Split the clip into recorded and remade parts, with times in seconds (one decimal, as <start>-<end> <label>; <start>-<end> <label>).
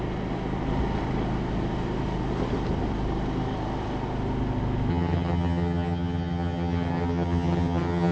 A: 0.0-4.9 recorded; 4.9-8.1 remade